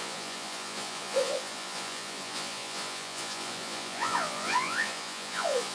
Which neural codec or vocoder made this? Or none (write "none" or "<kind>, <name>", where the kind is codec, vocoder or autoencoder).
vocoder, Vocos